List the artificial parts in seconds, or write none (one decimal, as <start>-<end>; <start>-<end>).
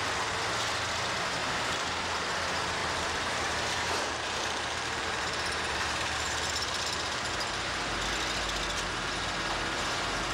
1.4-2.0; 2.8-7.3